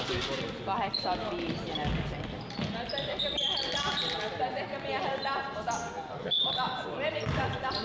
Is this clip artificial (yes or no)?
no